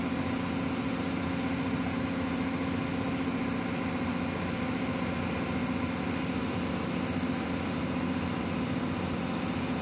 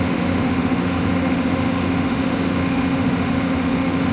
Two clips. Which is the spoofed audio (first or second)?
second